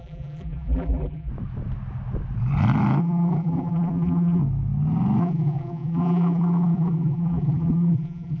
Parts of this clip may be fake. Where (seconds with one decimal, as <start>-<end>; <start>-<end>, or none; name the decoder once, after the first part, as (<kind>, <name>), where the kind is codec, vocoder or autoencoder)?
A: 0.0-1.3 (vocoder, BigVGAN v2); 3.0-4.4; 5.2-8.4